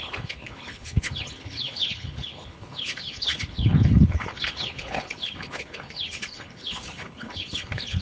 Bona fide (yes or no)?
no